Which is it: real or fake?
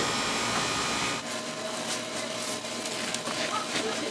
real